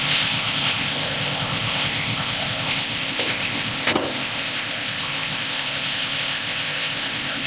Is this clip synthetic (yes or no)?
yes